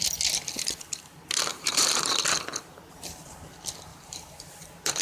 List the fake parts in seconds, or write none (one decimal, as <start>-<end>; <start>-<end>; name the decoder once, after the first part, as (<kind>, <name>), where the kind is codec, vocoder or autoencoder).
1.5-2.1 (vocoder, BigVGAN v2); 3.9-5.0